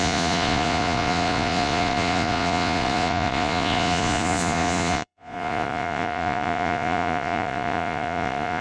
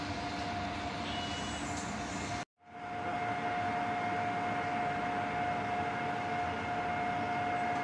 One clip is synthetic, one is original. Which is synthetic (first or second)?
first